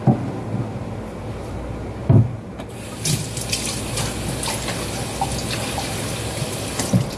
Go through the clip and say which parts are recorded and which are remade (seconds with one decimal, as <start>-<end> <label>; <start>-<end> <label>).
0.0-2.0 recorded; 2.0-3.8 remade; 3.8-7.2 recorded